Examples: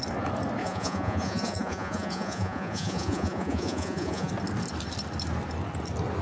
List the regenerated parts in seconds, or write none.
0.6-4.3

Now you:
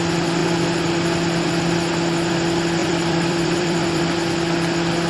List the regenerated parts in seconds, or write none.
2.8-4.0

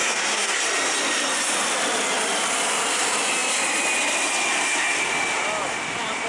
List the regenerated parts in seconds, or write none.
0.0-0.6